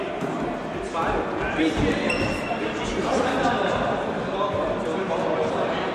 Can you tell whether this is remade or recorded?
recorded